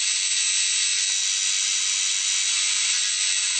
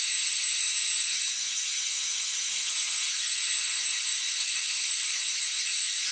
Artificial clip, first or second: second